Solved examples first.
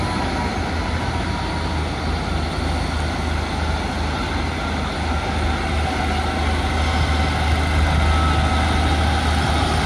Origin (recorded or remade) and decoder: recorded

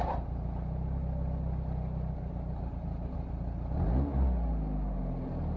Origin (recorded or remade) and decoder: recorded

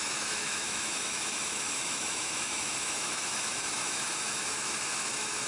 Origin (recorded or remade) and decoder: remade, autoencoder, DAC-VAE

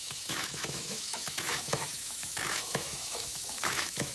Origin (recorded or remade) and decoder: remade, autoencoder, DAC-VAE